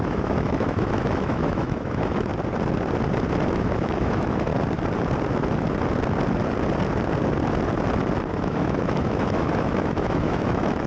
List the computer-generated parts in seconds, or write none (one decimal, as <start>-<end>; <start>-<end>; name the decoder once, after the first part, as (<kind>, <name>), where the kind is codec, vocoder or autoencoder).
0.0-2.3 (autoencoder, DAC-VAE); 3.5-4.5; 8.3-10.9